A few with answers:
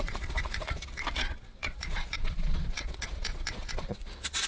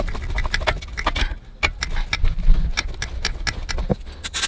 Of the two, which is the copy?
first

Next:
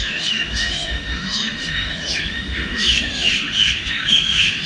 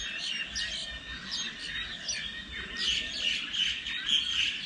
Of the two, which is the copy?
first